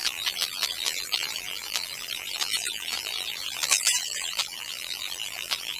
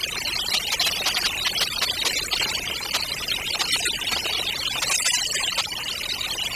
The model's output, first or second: first